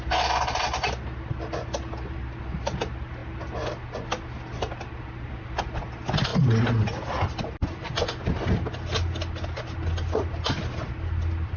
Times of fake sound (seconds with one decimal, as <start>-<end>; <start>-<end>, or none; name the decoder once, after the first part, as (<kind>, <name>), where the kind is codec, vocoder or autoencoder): none